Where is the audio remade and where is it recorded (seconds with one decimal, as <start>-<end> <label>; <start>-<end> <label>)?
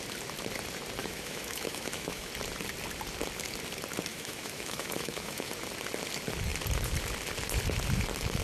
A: 0.0-1.0 recorded; 1.0-2.3 remade; 2.3-4.1 recorded; 4.1-5.5 remade; 5.5-8.4 recorded